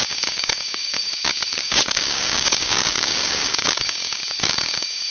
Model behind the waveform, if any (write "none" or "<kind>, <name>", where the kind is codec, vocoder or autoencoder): codec, DAC